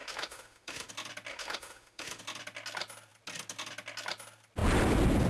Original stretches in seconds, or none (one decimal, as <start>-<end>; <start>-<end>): 0.9-1.3; 2.2-5.3